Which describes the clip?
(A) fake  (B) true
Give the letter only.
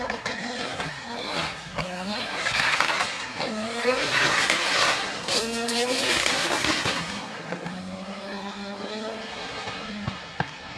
A